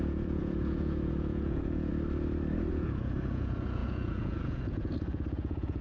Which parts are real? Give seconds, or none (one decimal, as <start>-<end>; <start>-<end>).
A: 1.9-2.7